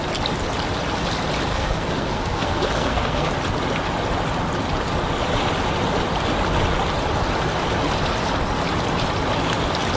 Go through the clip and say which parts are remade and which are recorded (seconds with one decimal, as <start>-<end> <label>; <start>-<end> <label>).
0.0-1.5 recorded; 1.5-3.3 remade; 3.3-10.0 recorded